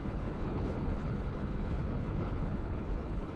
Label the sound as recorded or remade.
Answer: remade